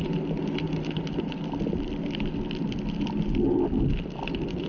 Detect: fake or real real